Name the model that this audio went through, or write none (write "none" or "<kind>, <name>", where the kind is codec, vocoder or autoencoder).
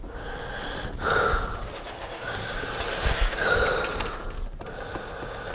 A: none